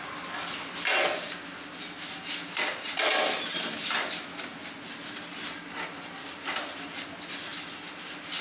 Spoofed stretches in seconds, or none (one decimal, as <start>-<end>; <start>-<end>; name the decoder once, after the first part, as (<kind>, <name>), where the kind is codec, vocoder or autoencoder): none